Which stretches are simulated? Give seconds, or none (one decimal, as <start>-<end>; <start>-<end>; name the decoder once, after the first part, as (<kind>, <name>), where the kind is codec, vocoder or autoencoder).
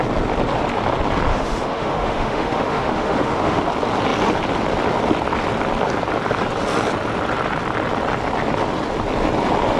1.3-3.6 (autoencoder, DAC-VAE)